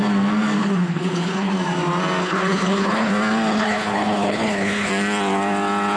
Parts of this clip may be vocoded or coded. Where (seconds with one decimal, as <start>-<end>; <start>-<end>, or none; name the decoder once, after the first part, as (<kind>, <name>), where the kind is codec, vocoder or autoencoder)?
0.6-1.5 (codec, HILCodec); 2.2-3.1; 3.5-4.9